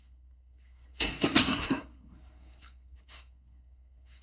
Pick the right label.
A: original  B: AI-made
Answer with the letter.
B